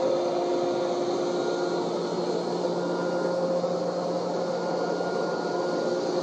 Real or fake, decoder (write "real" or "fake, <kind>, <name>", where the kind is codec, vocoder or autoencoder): real